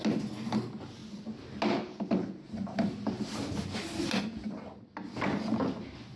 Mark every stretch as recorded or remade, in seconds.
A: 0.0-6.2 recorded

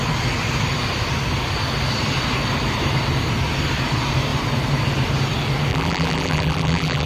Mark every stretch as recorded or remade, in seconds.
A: 0.0-5.7 recorded; 5.7-7.1 remade

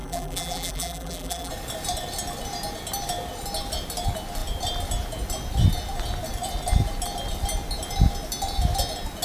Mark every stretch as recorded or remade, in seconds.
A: 0.0-1.5 remade; 1.5-9.2 recorded

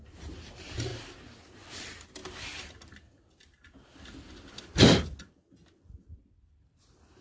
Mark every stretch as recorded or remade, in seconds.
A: 0.0-0.9 remade; 0.9-1.7 recorded; 1.7-2.2 remade; 2.2-6.5 recorded; 6.5-7.2 remade

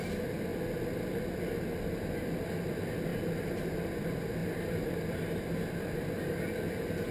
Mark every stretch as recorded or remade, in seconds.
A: 0.0-3.1 recorded; 3.1-3.8 remade; 3.8-7.1 recorded

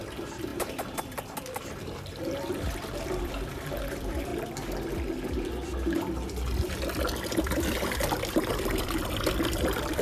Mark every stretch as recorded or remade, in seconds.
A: 0.0-4.3 remade; 4.3-7.4 recorded; 7.4-10.0 remade

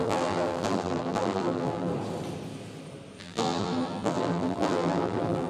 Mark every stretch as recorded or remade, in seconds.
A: 0.0-1.9 remade; 1.9-3.2 recorded; 3.2-5.5 remade

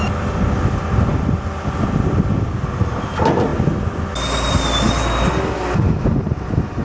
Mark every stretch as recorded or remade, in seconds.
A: 0.0-1.1 recorded; 1.1-2.5 remade; 2.5-6.8 recorded